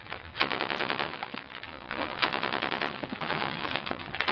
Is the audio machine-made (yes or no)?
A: yes